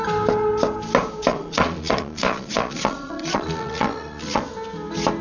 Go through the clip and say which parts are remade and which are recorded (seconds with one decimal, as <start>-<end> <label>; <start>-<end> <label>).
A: 0.0-1.3 recorded; 1.3-4.4 remade; 4.4-5.2 recorded

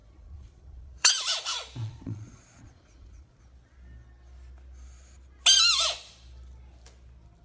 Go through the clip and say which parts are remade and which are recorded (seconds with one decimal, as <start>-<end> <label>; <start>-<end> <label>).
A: 0.0-1.1 remade; 1.1-1.8 recorded; 1.8-3.4 remade; 3.4-7.4 recorded